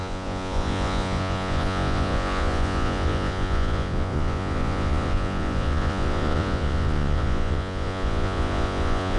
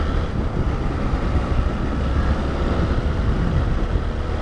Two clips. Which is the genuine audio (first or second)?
second